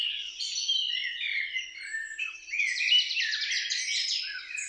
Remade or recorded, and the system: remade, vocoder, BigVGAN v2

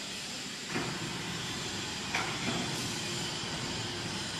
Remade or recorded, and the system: remade, vocoder, BigVGAN v2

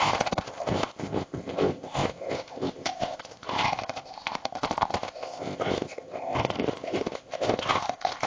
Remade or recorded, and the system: remade, codec, ZipCodec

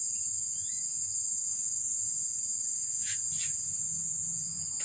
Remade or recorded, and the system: remade, vocoder, Vocos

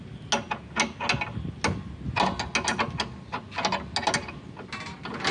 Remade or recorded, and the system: recorded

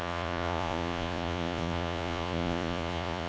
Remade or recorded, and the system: remade, vocoder, Vocos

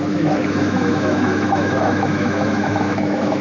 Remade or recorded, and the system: remade, autoencoder, DAC-VAE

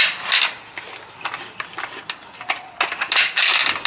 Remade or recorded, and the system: recorded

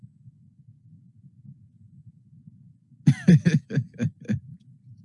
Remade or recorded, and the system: recorded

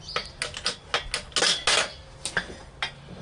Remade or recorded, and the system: recorded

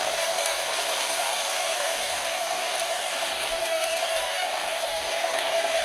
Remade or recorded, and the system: remade, codec, DAC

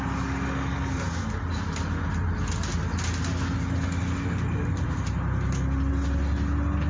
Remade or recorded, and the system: recorded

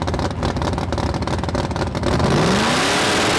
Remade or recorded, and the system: recorded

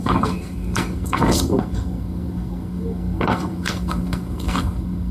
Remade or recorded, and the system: remade, codec, SNAC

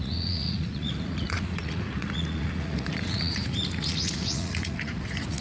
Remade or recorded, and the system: remade, vocoder, Vocos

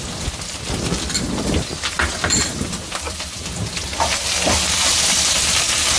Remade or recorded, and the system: remade, vocoder, BigVGAN v2